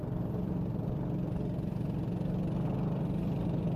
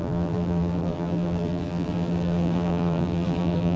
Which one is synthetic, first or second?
second